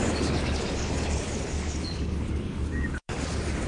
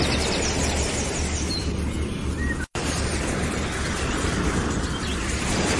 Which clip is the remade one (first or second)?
first